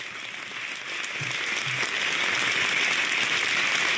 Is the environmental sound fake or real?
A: real